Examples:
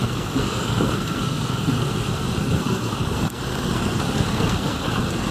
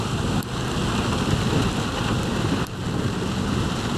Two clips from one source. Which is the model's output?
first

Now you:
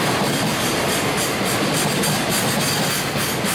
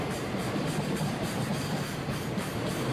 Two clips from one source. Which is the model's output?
second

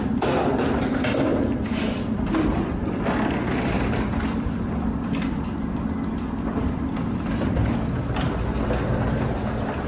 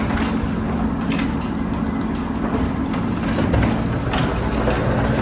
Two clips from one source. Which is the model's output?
first